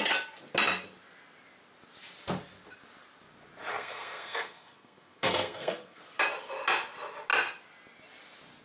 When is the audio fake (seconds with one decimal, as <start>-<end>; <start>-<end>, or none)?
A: 3.7-6.0